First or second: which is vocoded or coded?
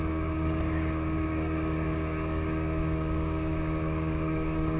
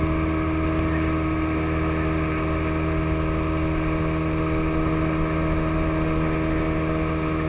first